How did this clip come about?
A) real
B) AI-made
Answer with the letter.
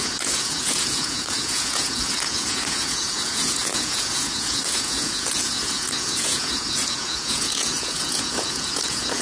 B